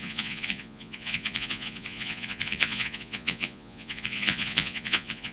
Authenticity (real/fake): fake